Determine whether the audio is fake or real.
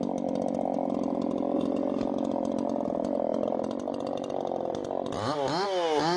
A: real